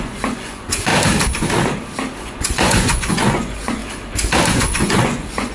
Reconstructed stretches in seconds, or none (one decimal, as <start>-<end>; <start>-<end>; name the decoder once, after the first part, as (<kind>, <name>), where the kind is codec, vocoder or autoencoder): 0.0-0.9 (vocoder, Vocos); 2.2-3.8; 4.5-5.5